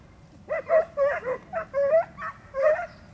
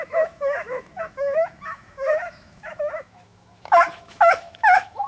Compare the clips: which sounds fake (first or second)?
second